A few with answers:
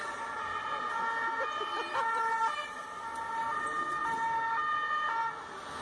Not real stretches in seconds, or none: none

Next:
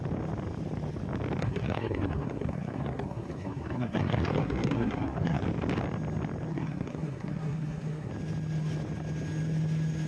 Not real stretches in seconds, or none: 1.4-5.4; 6.5-8.1

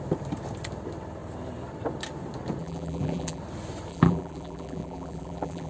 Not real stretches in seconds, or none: 2.6-3.4; 3.9-5.7

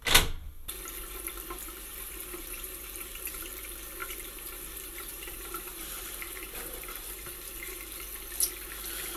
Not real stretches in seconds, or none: 1.9-3.5; 4.0-8.0